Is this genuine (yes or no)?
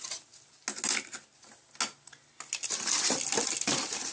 yes